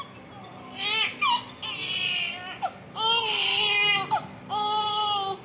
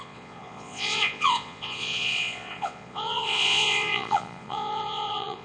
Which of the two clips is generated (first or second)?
second